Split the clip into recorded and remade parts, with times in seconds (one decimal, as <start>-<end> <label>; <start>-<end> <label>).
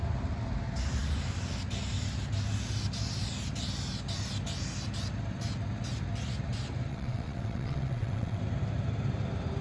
0.0-6.9 recorded; 6.9-8.4 remade; 8.4-9.6 recorded